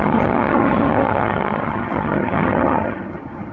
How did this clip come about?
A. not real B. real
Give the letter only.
A